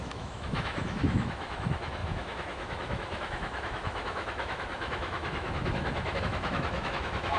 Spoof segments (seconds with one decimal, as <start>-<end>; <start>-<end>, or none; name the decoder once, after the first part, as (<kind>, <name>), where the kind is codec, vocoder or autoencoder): 0.0-7.4 (autoencoder, DAC-VAE)